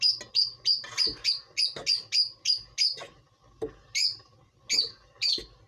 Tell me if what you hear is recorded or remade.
recorded